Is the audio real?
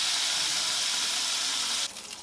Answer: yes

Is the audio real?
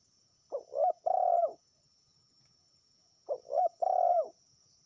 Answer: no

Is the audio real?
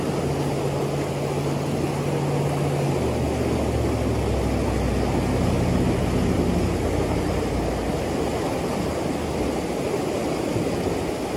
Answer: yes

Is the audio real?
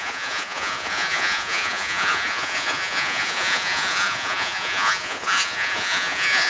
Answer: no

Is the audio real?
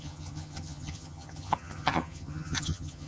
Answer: no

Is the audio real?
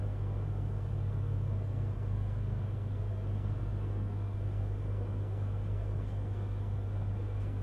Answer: no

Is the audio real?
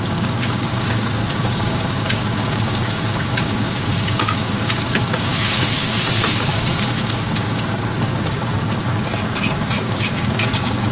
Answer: no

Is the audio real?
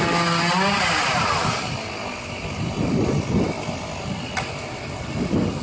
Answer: yes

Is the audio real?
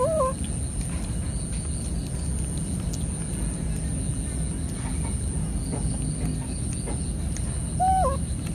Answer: yes